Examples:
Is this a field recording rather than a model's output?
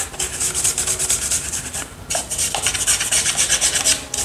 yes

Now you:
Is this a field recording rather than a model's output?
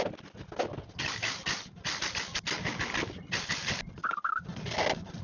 yes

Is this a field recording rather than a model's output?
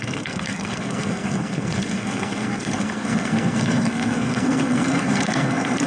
no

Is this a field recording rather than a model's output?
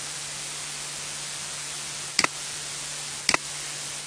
yes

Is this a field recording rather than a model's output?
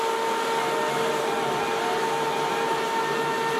yes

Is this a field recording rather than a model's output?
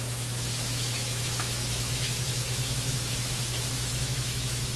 no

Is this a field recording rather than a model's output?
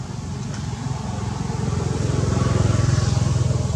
yes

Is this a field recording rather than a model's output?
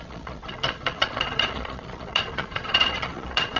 no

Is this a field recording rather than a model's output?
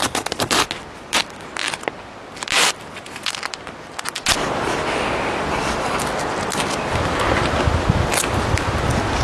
yes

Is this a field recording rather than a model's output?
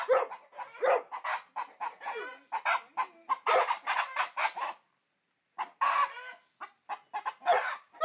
yes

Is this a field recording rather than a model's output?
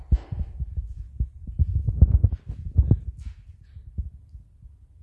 yes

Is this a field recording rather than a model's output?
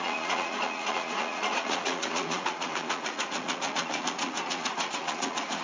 no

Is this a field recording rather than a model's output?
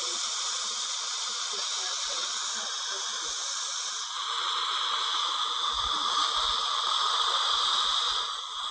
yes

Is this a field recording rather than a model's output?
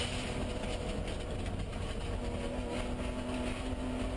yes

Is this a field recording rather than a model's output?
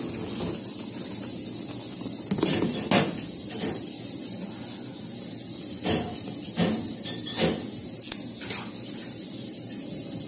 yes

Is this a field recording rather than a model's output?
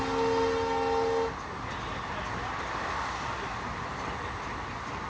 yes